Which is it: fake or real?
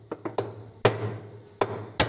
real